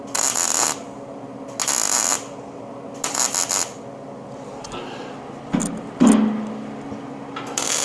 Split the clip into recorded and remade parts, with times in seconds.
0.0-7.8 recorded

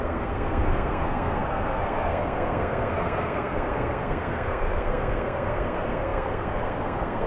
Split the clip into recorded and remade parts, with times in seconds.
0.0-7.3 remade

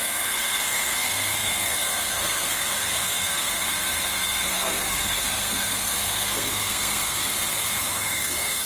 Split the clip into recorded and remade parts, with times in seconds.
0.0-7.3 remade; 7.3-7.8 recorded; 7.8-8.7 remade